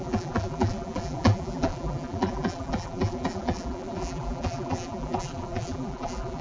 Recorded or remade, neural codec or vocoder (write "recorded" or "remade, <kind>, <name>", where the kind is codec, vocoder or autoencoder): remade, vocoder, BigVGAN v2